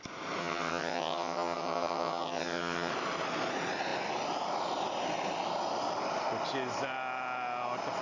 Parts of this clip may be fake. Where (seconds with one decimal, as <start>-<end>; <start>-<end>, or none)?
0.4-2.9